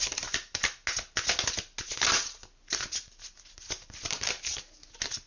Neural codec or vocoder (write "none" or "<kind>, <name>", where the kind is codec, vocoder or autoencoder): none